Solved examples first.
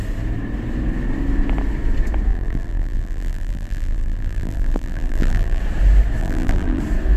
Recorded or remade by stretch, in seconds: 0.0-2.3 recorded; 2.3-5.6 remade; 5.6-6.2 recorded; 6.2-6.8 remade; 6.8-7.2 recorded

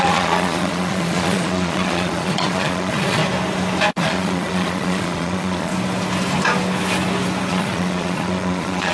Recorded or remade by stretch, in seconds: 0.0-3.2 remade; 3.2-3.9 recorded; 3.9-5.7 remade; 5.7-7.5 recorded; 7.5-8.9 remade

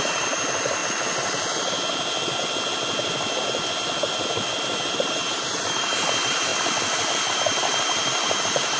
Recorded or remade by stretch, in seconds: 0.0-0.8 remade; 0.8-4.9 recorded; 4.9-6.5 remade; 6.5-7.3 recorded; 7.3-8.8 remade

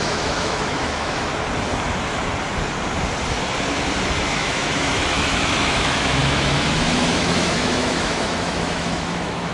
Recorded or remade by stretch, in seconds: 0.0-1.3 remade; 1.3-4.3 recorded; 4.3-9.5 remade

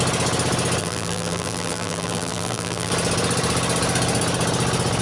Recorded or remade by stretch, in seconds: 0.0-0.8 recorded; 0.8-2.9 remade; 2.9-5.0 recorded

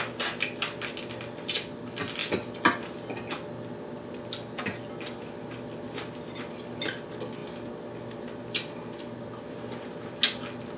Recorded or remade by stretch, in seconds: 0.0-10.8 recorded

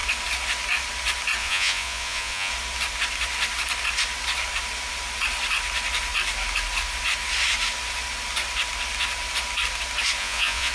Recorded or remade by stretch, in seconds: 0.0-1.4 recorded; 1.4-2.5 remade; 2.5-10.2 recorded; 10.2-10.7 remade

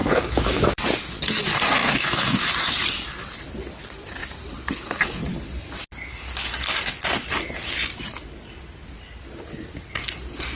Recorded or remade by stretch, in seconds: 0.0-0.8 remade; 0.8-1.8 recorded; 1.8-2.5 remade; 2.5-10.6 recorded